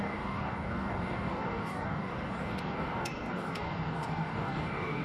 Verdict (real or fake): fake